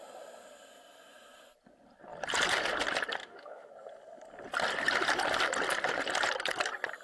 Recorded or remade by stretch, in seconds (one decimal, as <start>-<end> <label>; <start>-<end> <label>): 0.0-3.2 recorded; 3.2-3.7 remade; 3.7-7.0 recorded